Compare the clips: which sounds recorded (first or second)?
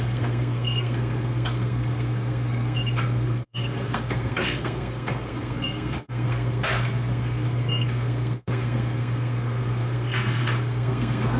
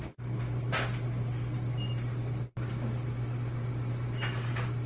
second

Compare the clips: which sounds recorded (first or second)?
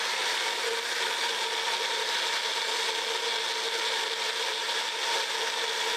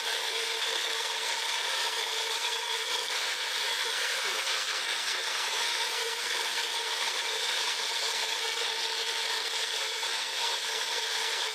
first